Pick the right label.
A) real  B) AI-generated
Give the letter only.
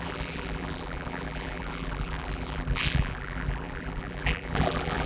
B